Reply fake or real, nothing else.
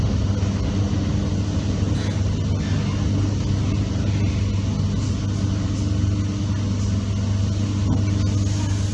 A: real